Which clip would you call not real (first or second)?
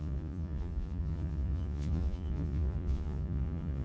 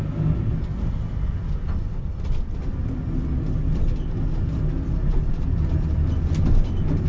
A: first